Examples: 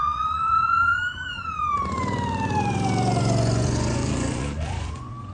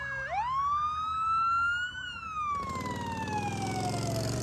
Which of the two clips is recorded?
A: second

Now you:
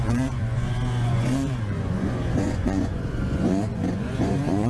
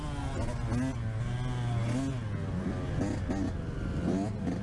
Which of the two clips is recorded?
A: second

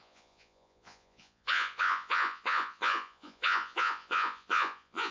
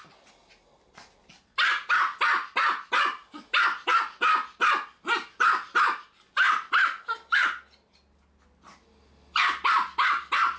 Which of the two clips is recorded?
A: second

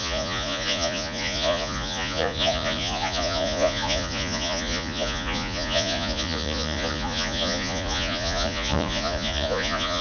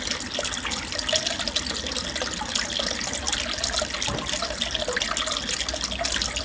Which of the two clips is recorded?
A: second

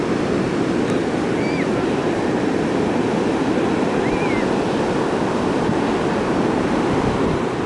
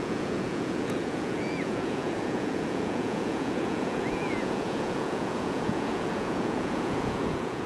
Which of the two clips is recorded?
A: first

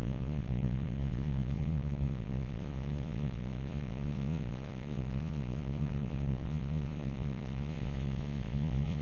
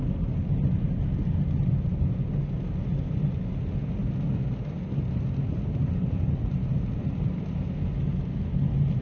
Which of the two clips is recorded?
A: second